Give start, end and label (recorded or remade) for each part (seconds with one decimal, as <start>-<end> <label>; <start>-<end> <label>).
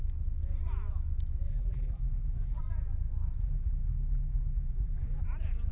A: 0.0-1.5 recorded; 1.5-2.6 remade; 2.6-3.4 recorded; 3.4-5.2 remade; 5.2-5.7 recorded